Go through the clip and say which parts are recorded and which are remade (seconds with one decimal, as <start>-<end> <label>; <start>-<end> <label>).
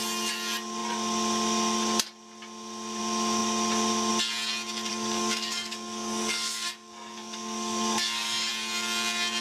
0.0-4.9 recorded; 4.9-8.5 remade; 8.5-9.4 recorded